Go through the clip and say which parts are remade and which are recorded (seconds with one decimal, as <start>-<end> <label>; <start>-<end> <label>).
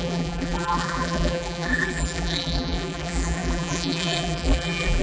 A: 0.0-5.0 remade